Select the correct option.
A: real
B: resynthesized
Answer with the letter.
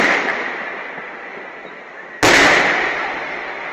A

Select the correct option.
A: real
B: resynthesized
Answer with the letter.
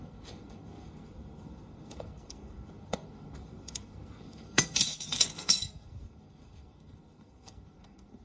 B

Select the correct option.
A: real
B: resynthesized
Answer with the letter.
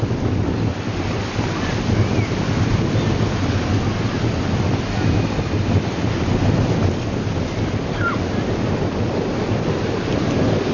A